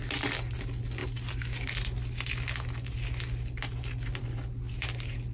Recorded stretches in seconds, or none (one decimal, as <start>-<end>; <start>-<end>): 0.0-5.3